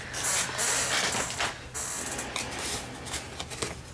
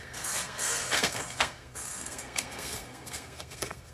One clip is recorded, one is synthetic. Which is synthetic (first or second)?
second